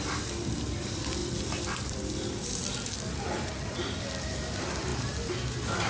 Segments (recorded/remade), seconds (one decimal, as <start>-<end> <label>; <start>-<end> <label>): 0.0-4.9 remade; 4.9-5.5 recorded; 5.5-5.9 remade